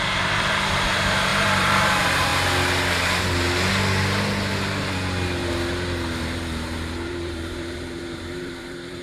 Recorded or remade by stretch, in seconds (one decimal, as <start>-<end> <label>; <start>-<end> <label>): 0.0-2.3 remade; 2.3-6.2 recorded; 6.2-9.0 remade